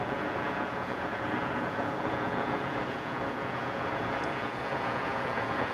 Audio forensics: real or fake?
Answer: fake